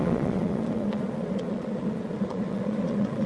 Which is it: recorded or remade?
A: remade